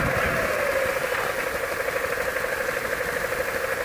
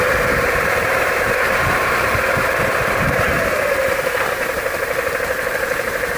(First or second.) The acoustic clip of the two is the first